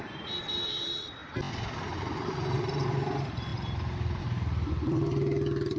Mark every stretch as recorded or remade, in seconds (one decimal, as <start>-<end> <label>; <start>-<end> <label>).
0.0-1.2 remade; 1.2-2.0 recorded; 2.0-5.8 remade